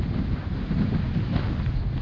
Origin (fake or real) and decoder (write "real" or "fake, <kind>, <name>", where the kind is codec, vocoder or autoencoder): real